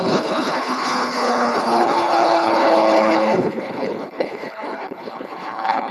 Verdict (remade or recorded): remade